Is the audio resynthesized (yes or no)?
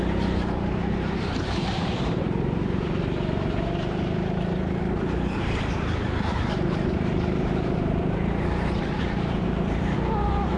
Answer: yes